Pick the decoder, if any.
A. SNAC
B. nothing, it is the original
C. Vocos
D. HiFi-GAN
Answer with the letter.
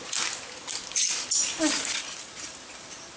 B